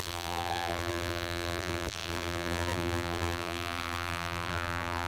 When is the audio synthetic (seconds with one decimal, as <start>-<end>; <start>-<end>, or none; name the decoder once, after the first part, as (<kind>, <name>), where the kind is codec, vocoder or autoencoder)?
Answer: 0.0-5.1 (vocoder, BigVGAN v2)